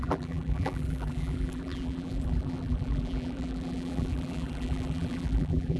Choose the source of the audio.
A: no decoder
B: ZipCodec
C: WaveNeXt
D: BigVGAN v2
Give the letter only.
D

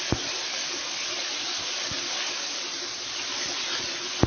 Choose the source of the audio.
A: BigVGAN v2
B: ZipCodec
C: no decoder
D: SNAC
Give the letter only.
C